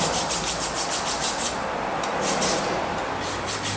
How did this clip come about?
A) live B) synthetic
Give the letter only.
A